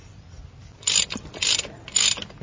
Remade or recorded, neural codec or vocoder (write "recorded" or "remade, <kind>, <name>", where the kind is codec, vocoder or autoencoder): recorded